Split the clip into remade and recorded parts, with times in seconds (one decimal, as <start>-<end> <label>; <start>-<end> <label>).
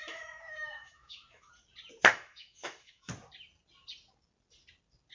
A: 0.0-1.5 remade; 1.5-2.1 recorded; 2.1-3.1 remade; 3.1-5.1 recorded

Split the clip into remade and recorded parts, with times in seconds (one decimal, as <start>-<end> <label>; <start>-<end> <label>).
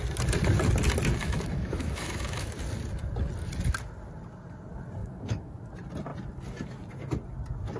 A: 0.0-1.2 recorded; 1.2-2.5 remade; 2.5-5.0 recorded; 5.0-5.6 remade; 5.6-7.8 recorded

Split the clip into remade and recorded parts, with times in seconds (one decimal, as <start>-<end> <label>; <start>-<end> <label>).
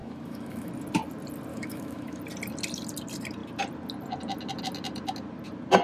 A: 0.0-0.7 remade; 0.7-1.5 recorded; 1.5-2.2 remade; 2.2-5.8 recorded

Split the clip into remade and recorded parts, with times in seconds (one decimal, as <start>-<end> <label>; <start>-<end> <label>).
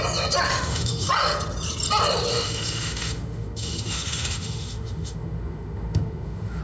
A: 0.0-0.5 recorded; 0.5-1.1 remade; 1.1-2.3 recorded; 2.3-6.6 remade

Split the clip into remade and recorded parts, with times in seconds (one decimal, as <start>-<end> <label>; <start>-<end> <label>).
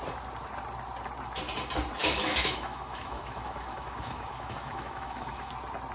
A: 0.0-2.0 recorded; 2.0-5.5 remade; 5.5-5.9 recorded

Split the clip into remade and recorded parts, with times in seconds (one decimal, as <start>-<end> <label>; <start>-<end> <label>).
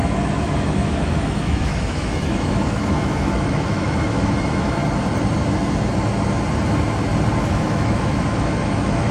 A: 0.0-4.8 remade; 4.8-7.4 recorded; 7.4-9.1 remade